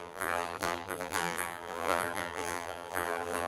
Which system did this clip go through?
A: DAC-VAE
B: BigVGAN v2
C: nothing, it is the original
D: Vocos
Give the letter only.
B